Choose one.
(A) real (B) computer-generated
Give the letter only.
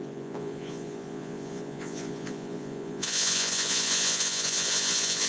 B